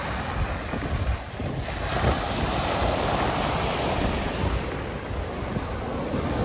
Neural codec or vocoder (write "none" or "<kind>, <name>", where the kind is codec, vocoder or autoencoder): none